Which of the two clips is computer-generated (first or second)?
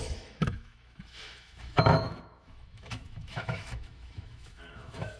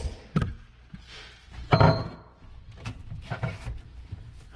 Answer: first